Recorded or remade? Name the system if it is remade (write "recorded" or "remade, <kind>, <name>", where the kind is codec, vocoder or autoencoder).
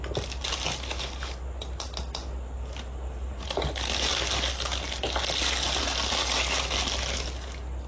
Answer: recorded